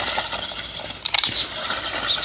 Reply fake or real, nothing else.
real